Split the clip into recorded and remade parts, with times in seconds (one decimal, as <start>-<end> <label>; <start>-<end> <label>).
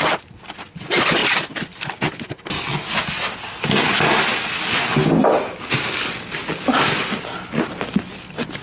0.0-8.6 recorded